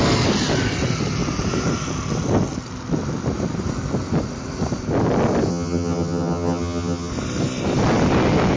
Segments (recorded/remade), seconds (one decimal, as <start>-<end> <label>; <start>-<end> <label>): 0.0-5.5 recorded; 5.5-7.1 remade; 7.1-8.6 recorded